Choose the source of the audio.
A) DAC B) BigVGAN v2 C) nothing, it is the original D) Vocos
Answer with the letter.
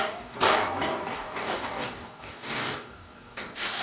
A